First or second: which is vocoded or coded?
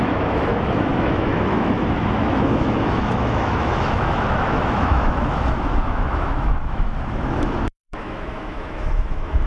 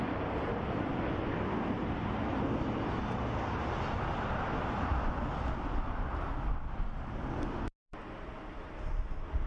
first